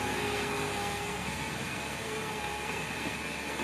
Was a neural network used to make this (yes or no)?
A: yes